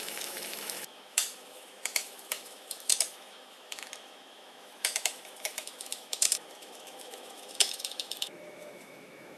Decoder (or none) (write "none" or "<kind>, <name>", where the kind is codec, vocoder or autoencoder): autoencoder, DAC-VAE